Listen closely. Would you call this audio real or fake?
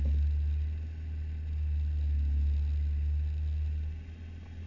real